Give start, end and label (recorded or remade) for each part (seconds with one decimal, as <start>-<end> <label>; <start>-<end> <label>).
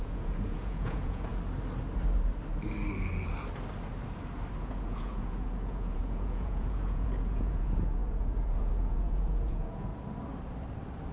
0.0-1.3 remade; 1.3-4.6 recorded; 4.6-9.9 remade; 9.9-11.1 recorded